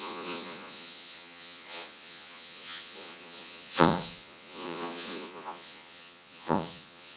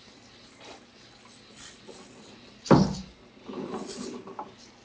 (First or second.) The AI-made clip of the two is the first